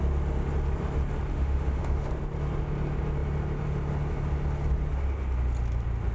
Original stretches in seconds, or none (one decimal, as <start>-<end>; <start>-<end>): 0.0-1.3; 2.1-6.1